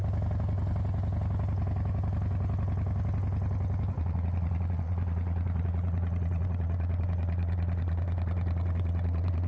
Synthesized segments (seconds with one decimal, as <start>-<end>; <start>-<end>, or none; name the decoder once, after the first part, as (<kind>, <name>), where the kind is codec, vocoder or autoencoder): 4.0-9.5 (vocoder, Vocos)